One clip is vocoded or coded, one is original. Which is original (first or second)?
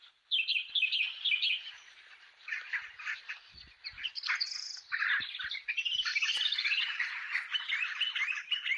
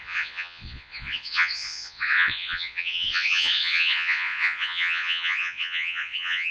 first